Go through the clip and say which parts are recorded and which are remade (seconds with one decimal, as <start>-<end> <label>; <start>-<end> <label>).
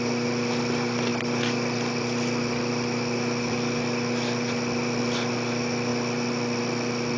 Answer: 0.0-7.2 recorded